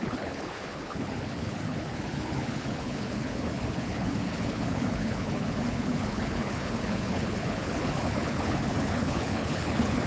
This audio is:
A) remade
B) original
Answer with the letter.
A